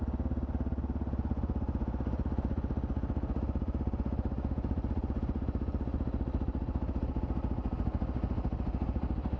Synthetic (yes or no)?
no